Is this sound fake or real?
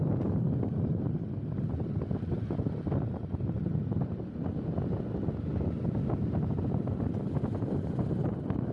real